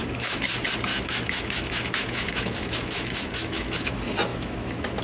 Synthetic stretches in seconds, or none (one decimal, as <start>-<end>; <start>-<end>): 0.0-0.5; 0.9-3.9; 4.3-5.0